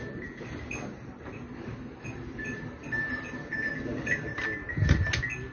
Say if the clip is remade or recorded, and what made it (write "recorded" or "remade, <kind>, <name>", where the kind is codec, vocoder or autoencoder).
recorded